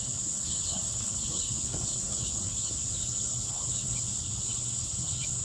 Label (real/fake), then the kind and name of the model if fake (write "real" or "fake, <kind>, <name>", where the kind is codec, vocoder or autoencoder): fake, codec, HILCodec